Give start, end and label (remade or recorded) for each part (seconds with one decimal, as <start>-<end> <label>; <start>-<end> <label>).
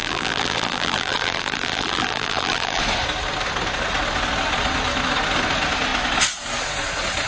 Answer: 0.0-2.8 remade; 2.8-7.3 recorded